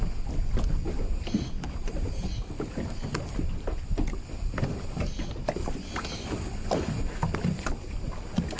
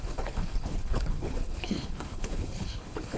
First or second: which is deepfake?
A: second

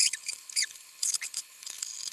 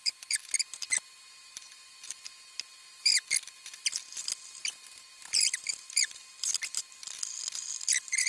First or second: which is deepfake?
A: first